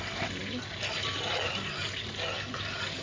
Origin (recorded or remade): recorded